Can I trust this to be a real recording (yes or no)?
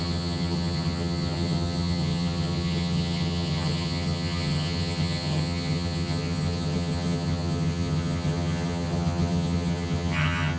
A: no